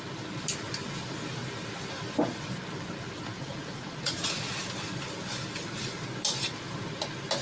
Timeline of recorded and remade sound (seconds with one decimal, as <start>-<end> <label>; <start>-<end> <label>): 0.0-3.4 recorded; 3.4-4.5 remade; 4.5-7.4 recorded